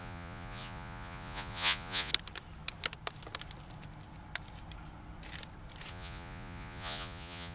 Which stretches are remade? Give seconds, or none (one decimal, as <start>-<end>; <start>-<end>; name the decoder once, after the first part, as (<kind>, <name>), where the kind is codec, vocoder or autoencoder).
0.0-2.1 (vocoder, Vocos); 5.9-7.5